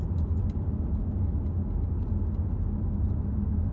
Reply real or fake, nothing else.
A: real